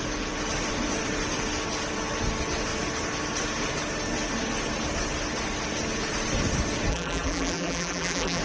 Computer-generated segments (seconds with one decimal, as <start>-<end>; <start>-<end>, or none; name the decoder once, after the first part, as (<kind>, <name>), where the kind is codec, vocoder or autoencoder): 6.9-8.4 (vocoder, BigVGAN v2)